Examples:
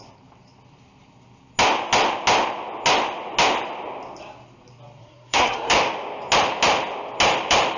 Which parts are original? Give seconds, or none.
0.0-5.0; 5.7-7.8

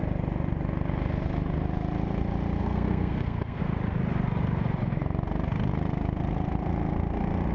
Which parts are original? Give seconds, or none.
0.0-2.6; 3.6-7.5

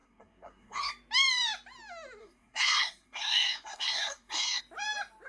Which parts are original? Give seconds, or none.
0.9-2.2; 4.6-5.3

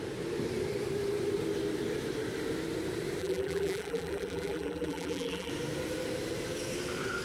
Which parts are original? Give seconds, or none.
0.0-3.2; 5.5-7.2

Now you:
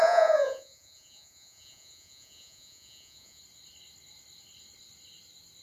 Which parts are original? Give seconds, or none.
3.4-5.6